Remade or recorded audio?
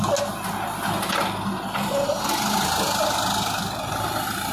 recorded